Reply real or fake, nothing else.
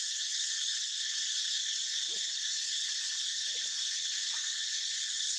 real